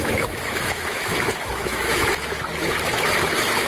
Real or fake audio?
fake